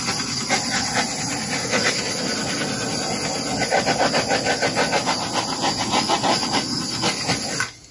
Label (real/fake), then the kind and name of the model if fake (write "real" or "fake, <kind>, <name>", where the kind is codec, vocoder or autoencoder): real